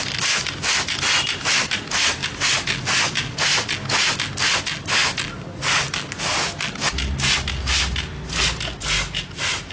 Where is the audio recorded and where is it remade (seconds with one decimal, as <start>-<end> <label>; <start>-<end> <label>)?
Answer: 0.0-9.7 recorded